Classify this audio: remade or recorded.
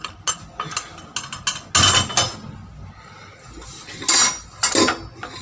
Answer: recorded